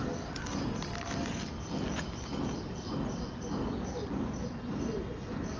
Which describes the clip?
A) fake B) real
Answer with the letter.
A